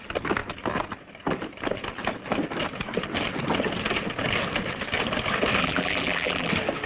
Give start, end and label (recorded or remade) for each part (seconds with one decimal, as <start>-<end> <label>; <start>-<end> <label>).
0.0-5.6 recorded; 5.6-6.5 remade; 6.5-6.9 recorded